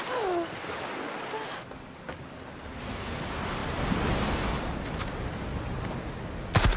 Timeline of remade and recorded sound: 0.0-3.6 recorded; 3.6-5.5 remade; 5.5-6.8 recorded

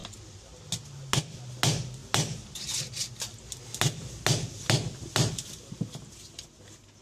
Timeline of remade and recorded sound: 0.0-0.6 remade; 0.6-7.0 recorded

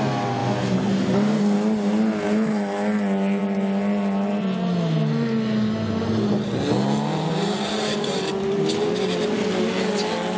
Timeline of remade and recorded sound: 0.0-10.4 recorded

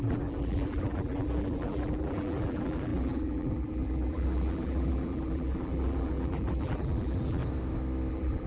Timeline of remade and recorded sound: 0.0-7.4 remade; 7.4-8.1 recorded; 8.1-8.5 remade

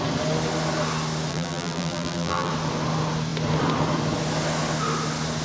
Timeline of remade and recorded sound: 0.0-1.3 recorded; 1.3-2.5 remade; 2.5-5.4 recorded

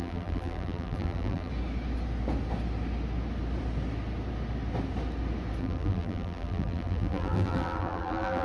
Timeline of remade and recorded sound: 0.0-1.5 remade; 1.5-5.6 recorded; 5.6-8.4 remade